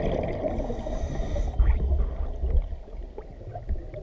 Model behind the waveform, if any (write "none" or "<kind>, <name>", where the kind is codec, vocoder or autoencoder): none